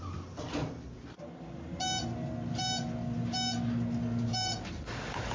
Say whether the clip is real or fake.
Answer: real